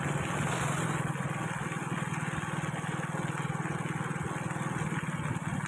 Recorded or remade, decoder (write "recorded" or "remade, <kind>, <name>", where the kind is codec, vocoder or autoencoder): recorded